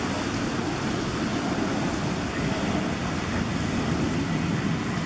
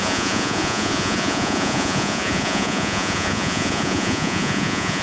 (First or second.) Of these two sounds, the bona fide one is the first